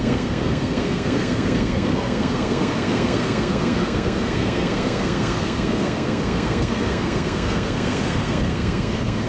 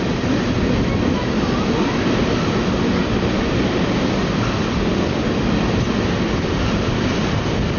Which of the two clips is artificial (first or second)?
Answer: first